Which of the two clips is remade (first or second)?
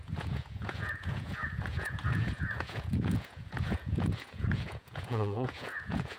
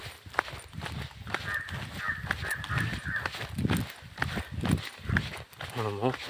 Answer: first